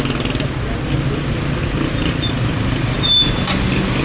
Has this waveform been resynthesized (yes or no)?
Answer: no